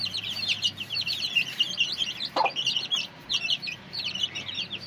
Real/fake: fake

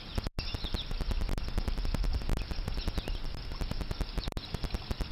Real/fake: real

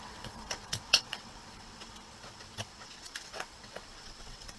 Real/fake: fake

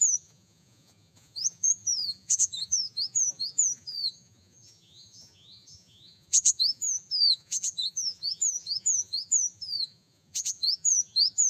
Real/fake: fake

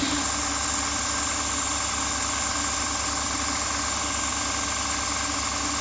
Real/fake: real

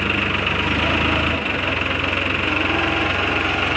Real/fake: real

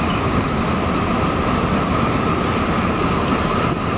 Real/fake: real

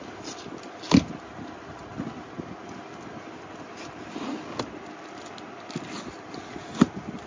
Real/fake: real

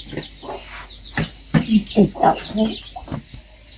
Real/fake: real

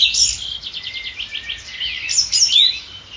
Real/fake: real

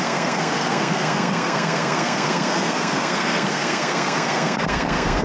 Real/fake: fake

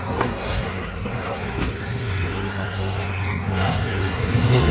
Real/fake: fake